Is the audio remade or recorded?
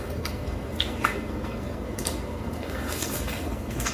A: remade